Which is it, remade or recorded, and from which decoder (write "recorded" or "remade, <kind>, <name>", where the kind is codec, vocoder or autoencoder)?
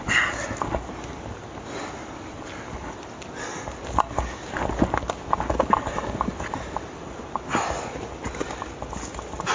recorded